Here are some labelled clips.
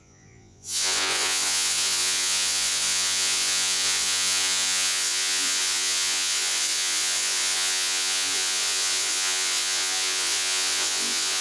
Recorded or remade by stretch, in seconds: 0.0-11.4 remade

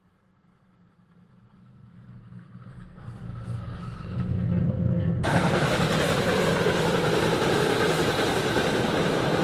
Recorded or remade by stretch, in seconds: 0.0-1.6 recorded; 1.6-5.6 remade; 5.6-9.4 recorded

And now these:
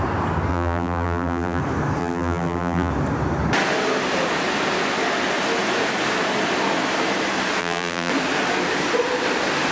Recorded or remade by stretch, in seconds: 0.0-0.5 recorded; 0.5-1.6 remade; 1.6-2.0 recorded; 2.0-2.9 remade; 2.9-7.6 recorded; 7.6-8.1 remade; 8.1-9.7 recorded